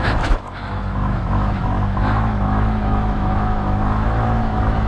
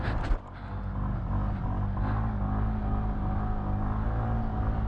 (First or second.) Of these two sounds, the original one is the second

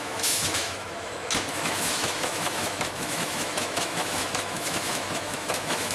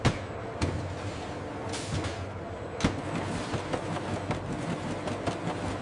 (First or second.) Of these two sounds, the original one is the second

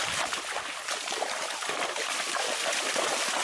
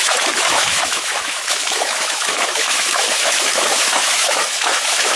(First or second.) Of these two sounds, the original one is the first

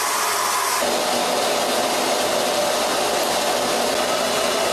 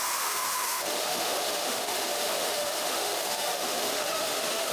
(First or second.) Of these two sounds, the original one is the first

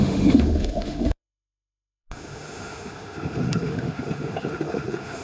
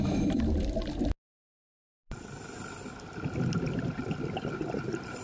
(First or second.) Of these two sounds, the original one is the second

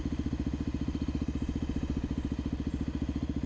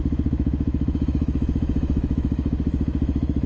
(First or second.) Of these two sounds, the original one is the first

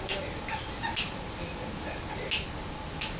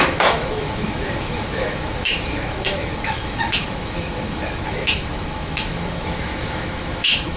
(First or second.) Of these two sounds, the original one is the first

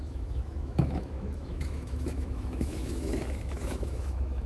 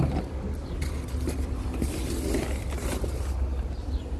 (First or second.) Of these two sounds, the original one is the second